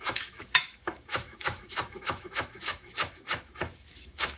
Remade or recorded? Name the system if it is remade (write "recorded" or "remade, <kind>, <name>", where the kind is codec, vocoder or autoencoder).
remade, autoencoder, DAC-VAE